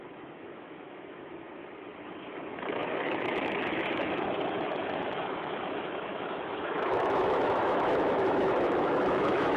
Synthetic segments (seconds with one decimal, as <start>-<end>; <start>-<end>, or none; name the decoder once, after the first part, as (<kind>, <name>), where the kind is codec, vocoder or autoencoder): 0.0-1.6 (autoencoder, DAC-VAE); 2.3-9.6